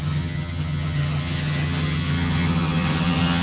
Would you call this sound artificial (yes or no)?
yes